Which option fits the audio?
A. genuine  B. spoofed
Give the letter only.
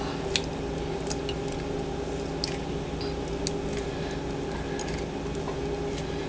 A